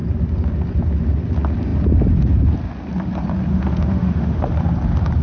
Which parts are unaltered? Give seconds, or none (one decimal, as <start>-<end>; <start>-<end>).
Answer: 0.0-3.5; 4.5-5.2